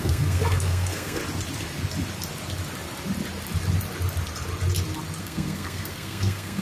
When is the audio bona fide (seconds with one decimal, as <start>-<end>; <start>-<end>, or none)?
1.2-5.2